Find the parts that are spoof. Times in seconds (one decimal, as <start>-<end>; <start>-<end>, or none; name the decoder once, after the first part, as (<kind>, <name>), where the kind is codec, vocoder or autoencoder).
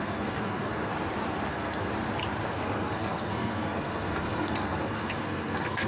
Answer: 0.0-0.9 (codec, SNAC); 1.5-1.9; 2.5-5.9